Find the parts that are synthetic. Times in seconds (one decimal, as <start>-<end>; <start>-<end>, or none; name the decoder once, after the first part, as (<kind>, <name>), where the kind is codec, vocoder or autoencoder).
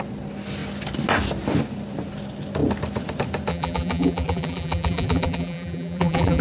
3.5-6.4 (vocoder, BigVGAN v2)